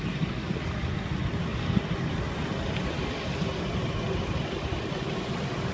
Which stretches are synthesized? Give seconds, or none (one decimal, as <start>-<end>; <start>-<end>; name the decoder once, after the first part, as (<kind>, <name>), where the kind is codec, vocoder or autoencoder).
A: none